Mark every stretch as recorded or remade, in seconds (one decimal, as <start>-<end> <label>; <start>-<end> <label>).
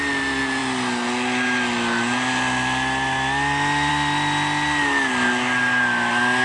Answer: 0.0-6.4 recorded